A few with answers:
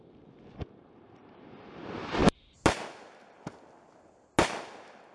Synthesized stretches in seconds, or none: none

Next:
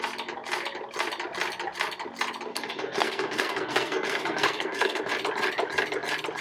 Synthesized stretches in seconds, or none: 2.5-5.1 (codec, SNAC)

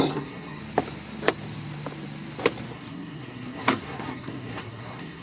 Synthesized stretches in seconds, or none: 0.0-0.6 (codec, SNAC); 2.7-5.2

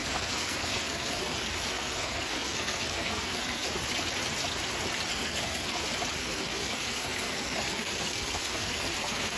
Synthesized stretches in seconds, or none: 0.0-3.7 (codec, SNAC); 5.1-5.8; 6.2-9.4

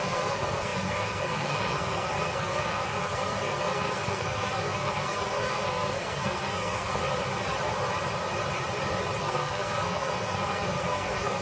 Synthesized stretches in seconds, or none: 0.0-7.0 (codec, SNAC); 9.2-11.4

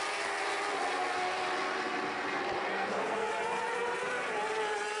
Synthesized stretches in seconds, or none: 2.7-3.3 (codec, SNAC)

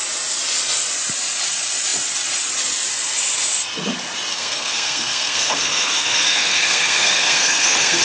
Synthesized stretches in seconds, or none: 4.3-8.0 (codec, SNAC)